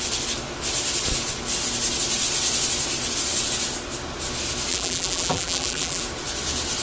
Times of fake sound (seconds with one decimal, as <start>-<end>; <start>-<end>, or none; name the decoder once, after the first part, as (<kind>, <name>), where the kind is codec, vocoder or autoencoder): 4.7-6.0 (vocoder, BigVGAN v2)